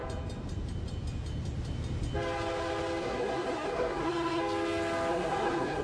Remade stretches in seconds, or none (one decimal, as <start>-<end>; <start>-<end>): 3.0-4.4; 5.1-5.8